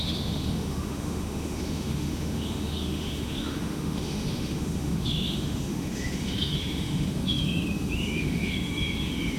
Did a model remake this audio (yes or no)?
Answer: yes